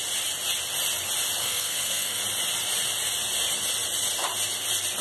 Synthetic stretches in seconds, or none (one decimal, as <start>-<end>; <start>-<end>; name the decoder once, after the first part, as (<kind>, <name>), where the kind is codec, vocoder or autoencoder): 1.4-2.2 (codec, SNAC)